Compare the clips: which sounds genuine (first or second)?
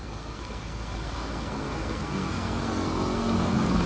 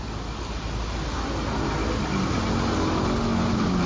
second